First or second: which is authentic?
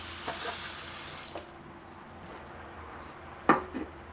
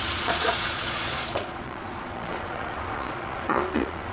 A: first